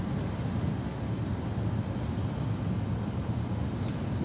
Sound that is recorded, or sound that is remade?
recorded